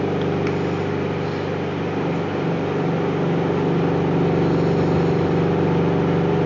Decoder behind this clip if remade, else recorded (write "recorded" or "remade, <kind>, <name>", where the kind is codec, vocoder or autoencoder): recorded